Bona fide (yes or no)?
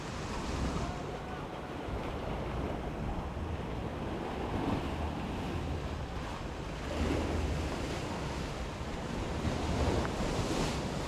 yes